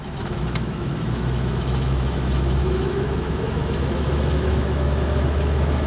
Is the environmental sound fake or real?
fake